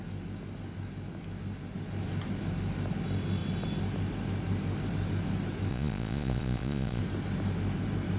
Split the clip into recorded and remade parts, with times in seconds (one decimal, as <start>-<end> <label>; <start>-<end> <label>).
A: 0.0-5.7 recorded; 5.7-7.0 remade; 7.0-8.2 recorded

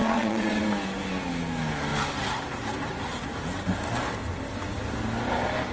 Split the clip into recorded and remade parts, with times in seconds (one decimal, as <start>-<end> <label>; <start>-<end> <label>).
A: 0.0-0.6 remade; 0.6-5.7 recorded

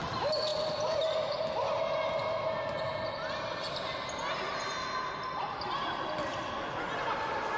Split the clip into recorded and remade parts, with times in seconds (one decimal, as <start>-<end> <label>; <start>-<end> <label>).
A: 0.0-7.6 recorded

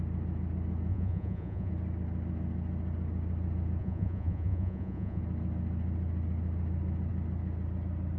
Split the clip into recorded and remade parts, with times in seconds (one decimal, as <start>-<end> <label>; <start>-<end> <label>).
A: 0.0-0.9 recorded; 0.9-1.7 remade; 1.7-3.8 recorded; 3.8-5.2 remade; 5.2-8.2 recorded

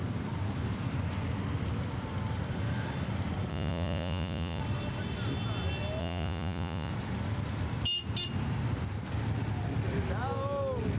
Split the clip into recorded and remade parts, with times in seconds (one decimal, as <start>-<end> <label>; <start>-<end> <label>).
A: 0.0-3.5 recorded; 3.5-4.6 remade; 4.6-6.0 recorded; 6.0-6.9 remade; 6.9-11.0 recorded